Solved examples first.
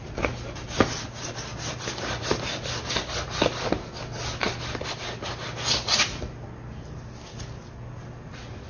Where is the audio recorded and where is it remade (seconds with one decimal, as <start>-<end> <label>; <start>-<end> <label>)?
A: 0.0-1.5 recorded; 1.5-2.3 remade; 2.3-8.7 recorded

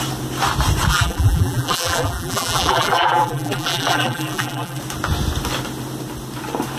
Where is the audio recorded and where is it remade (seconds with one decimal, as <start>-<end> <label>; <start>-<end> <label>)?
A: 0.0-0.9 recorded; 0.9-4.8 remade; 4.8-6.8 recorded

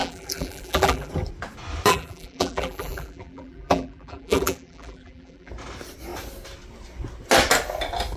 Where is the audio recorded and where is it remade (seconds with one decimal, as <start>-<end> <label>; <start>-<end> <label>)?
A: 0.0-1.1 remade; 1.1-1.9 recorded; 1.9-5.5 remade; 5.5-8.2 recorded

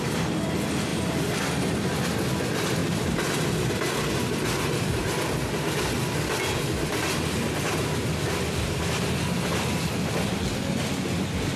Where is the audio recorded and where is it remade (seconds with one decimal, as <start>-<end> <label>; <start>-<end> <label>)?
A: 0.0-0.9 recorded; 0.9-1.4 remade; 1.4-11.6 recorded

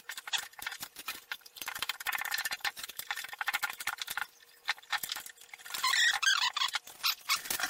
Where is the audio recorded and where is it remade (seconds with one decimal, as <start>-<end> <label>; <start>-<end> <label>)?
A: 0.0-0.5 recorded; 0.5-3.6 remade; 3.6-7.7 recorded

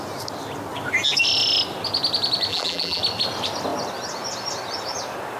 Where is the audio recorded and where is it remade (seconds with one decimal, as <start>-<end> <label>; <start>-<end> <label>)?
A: 0.0-2.5 recorded; 2.5-3.0 remade; 3.0-5.4 recorded